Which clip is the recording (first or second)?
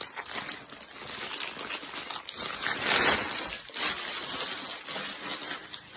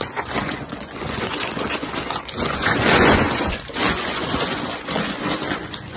first